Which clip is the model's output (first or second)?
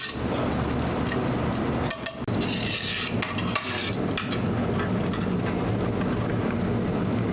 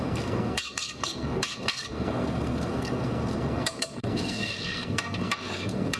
second